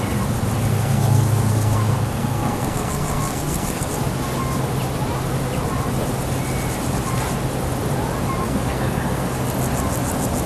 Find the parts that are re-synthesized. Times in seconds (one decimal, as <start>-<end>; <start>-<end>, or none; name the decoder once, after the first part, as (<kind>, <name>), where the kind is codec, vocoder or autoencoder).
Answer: 0.7-3.9 (codec, SNAC); 8.4-9.4